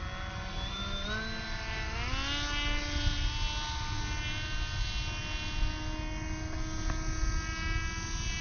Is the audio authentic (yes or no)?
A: yes